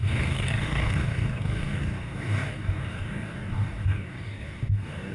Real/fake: fake